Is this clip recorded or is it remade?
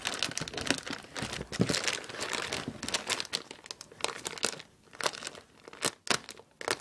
recorded